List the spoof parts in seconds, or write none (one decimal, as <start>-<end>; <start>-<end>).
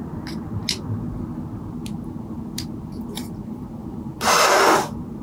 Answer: none